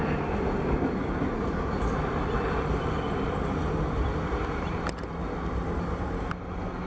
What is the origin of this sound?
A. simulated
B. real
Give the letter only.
B